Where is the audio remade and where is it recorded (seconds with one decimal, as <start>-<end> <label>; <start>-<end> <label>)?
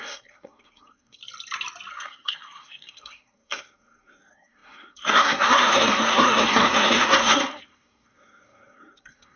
0.0-1.2 remade; 1.2-1.9 recorded; 1.9-9.4 remade